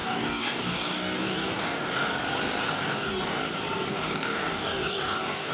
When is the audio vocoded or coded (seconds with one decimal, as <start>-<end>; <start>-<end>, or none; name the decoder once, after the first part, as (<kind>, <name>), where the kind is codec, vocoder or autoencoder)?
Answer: 0.0-2.1 (codec, DAC); 2.6-3.4; 3.9-5.5